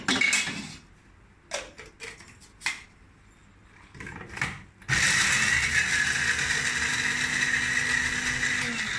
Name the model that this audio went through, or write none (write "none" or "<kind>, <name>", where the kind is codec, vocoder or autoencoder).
none